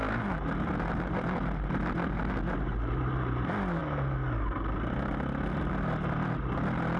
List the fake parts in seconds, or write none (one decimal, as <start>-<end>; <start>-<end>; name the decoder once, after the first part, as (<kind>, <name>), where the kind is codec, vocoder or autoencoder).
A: none